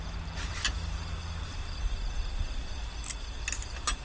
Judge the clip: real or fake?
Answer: real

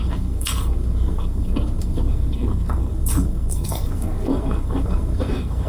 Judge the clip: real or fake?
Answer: fake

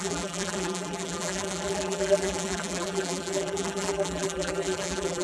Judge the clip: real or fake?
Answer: fake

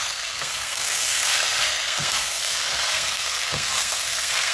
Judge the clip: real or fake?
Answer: fake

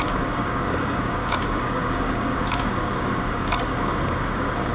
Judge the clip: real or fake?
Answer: fake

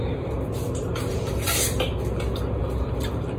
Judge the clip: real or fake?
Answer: real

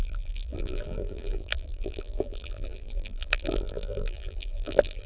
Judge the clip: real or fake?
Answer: fake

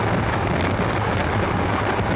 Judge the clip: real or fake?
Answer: real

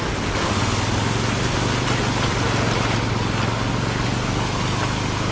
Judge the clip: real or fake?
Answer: real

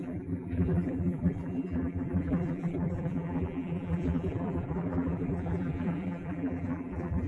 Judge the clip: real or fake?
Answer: fake